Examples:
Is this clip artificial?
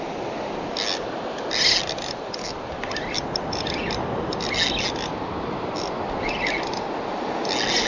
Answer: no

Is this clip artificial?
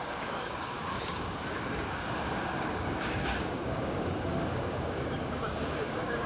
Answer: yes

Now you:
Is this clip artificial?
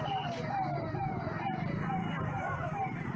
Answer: no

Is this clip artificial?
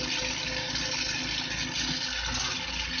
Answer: no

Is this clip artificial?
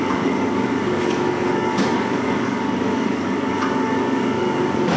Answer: yes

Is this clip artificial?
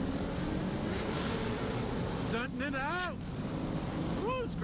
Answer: no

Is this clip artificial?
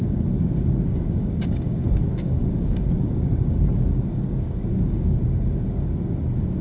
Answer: yes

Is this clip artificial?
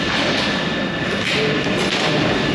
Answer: no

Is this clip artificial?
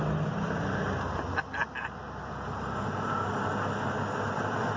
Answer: no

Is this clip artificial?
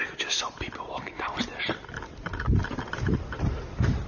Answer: no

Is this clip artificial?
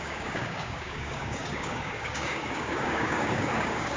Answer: yes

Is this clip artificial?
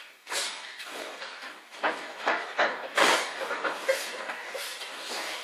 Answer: yes